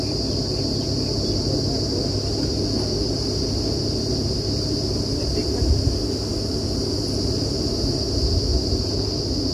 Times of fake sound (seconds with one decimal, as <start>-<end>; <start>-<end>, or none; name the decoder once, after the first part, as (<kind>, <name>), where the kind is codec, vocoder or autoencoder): none